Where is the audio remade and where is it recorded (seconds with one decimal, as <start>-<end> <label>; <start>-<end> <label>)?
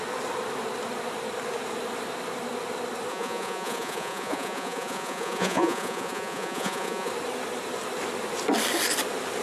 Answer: 0.0-3.1 recorded; 3.1-7.1 remade; 7.1-9.4 recorded